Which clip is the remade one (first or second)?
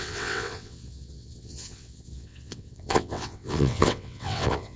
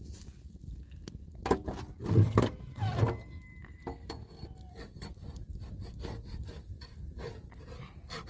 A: first